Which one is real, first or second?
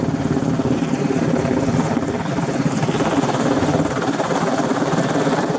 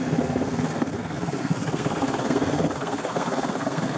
first